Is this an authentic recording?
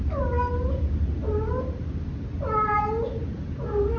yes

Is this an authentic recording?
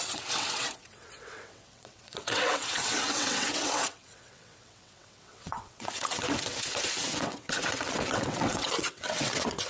no